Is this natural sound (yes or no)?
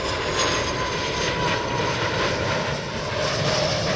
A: yes